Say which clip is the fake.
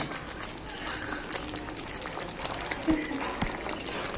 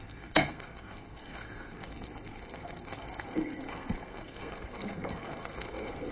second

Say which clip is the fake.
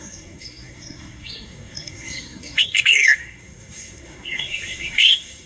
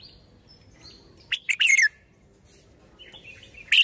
first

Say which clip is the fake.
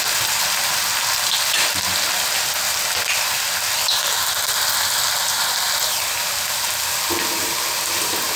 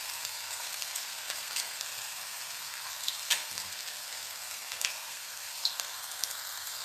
second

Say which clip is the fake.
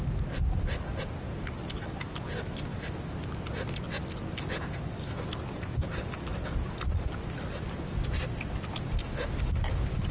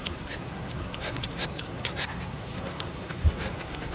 second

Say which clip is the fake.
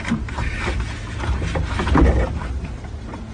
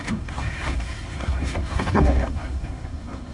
second